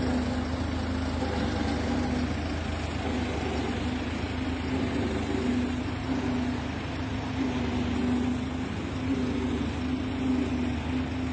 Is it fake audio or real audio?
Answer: real